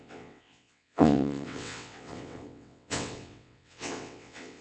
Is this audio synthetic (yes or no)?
yes